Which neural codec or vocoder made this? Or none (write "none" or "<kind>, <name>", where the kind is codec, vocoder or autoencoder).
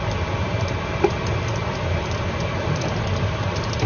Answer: vocoder, BigVGAN v2